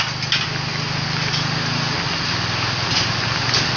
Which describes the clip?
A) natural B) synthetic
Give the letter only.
A